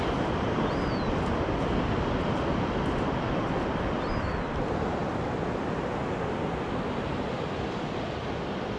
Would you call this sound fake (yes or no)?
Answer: no